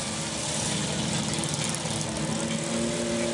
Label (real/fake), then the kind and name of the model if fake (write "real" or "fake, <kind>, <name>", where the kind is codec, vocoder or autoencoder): real